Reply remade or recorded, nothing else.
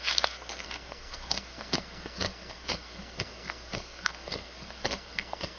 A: remade